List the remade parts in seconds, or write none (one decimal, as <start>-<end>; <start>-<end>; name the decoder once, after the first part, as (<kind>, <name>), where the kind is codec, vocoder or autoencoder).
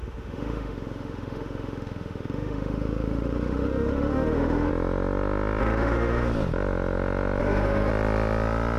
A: 0.0-4.7 (autoencoder, DAC-VAE); 5.6-6.3; 7.4-7.9